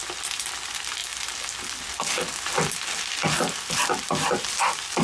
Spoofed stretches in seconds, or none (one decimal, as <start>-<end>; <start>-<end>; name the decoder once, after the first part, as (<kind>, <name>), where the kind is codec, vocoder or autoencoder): none